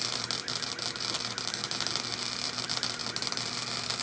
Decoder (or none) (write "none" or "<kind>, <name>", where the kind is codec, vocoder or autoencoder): none